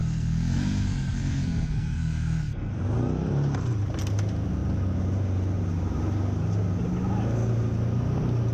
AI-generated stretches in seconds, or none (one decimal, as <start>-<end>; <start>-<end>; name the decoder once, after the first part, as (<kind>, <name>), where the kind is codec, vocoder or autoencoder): 0.0-2.7 (codec, SNAC)